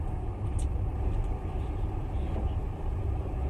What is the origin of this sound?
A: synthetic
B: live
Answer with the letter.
B